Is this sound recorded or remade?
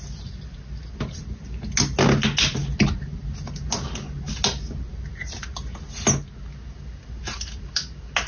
recorded